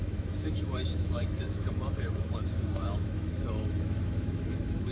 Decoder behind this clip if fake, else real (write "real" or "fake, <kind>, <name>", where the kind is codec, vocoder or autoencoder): fake, autoencoder, DAC-VAE